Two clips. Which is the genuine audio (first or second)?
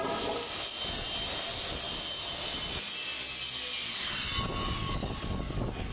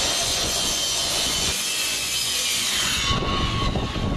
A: first